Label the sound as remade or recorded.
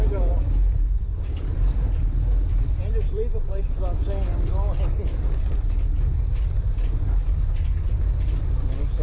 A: recorded